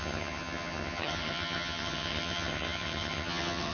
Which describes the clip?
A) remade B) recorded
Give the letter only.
A